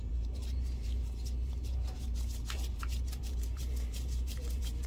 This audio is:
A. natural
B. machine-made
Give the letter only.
B